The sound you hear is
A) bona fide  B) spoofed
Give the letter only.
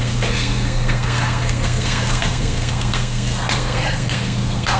B